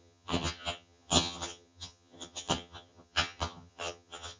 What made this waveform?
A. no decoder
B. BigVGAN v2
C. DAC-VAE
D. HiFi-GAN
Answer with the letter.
D